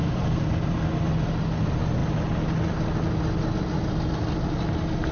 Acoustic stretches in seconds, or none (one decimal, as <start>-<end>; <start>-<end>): 0.9-5.1